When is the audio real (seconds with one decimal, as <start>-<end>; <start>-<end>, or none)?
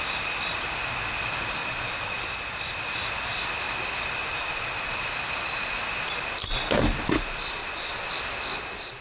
0.0-1.6; 2.2-4.2; 4.9-7.6; 8.1-9.0